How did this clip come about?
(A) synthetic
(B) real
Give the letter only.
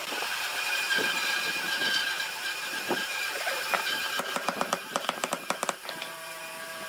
A